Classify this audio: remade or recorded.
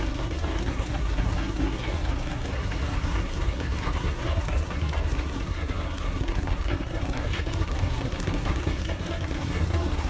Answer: remade